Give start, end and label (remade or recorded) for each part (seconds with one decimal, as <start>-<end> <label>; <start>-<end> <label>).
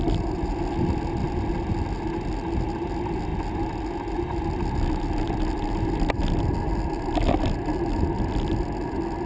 0.0-9.3 recorded